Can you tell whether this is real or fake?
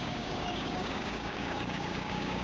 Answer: fake